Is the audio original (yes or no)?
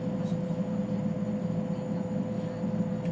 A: yes